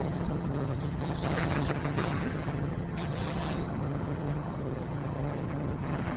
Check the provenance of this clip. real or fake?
fake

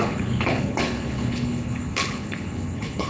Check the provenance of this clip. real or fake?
fake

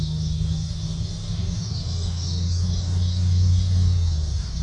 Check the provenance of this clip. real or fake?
fake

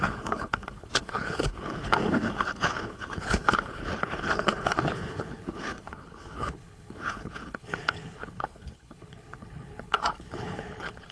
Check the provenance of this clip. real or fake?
fake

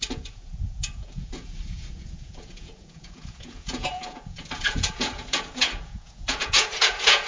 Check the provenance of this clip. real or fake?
fake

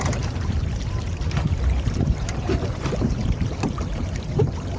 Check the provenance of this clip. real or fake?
fake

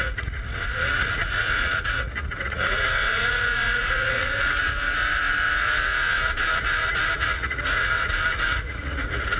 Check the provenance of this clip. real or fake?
fake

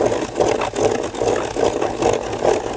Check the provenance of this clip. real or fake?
real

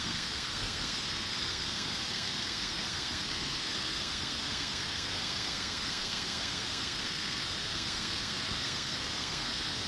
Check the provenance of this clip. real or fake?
fake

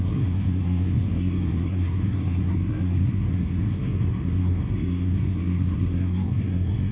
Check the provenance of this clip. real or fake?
fake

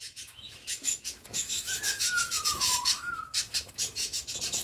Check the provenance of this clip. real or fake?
fake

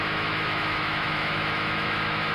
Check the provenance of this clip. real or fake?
fake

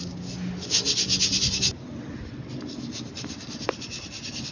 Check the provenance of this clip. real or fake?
real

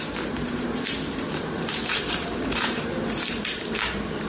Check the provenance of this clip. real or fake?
fake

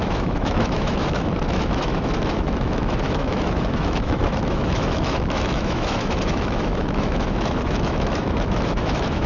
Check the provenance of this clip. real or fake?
fake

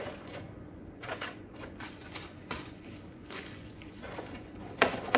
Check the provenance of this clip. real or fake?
fake